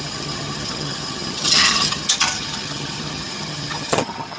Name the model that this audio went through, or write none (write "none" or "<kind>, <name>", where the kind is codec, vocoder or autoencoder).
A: vocoder, HiFi-GAN